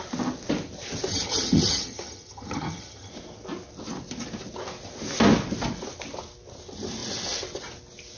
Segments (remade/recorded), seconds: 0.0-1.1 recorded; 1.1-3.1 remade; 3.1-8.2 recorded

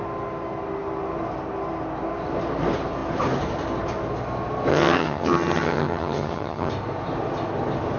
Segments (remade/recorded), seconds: 0.0-4.7 recorded; 4.7-6.7 remade; 6.7-8.0 recorded

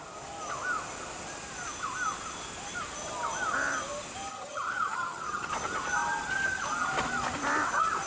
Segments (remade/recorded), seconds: 0.0-4.3 recorded; 4.3-5.5 remade; 5.5-8.1 recorded

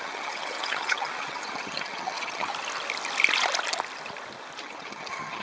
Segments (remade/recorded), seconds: 0.0-2.5 remade; 2.5-4.6 recorded; 4.6-5.4 remade

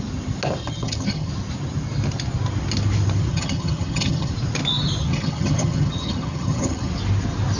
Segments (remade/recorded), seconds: 0.0-0.6 recorded; 0.6-1.3 remade; 1.3-3.3 recorded; 3.3-4.3 remade; 4.3-5.0 recorded; 5.0-6.9 remade; 6.9-7.6 recorded

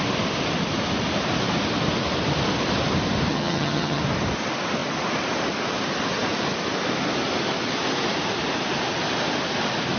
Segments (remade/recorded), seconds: 0.0-3.3 recorded; 3.3-4.0 remade; 4.0-10.0 recorded